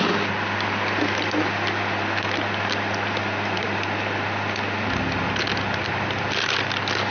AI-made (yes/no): no